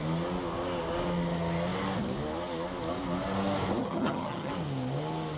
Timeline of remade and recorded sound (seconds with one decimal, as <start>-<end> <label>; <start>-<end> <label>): 0.0-3.8 recorded; 3.8-4.5 remade; 4.5-5.4 recorded